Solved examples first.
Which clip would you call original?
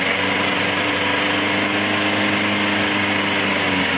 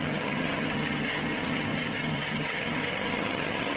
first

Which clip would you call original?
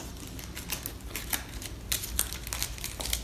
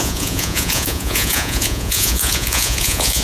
first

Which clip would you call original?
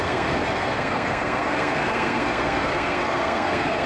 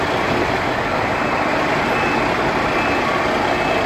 second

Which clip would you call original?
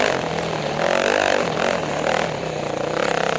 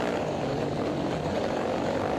first